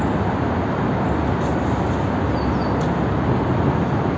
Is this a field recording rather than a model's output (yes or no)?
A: yes